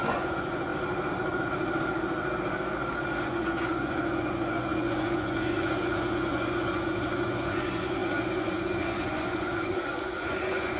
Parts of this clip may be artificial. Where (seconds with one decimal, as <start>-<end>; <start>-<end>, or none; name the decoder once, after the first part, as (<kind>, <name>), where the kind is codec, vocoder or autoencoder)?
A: 0.0-0.7 (vocoder, Vocos); 3.2-10.8